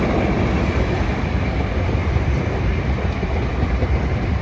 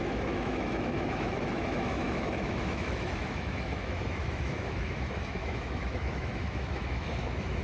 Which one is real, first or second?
first